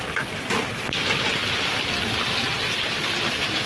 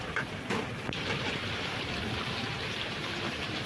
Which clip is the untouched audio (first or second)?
first